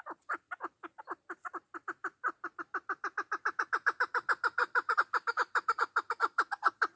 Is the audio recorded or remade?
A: remade